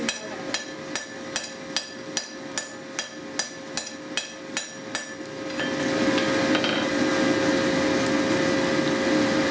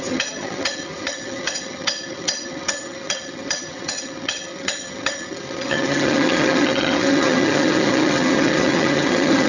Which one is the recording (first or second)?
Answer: first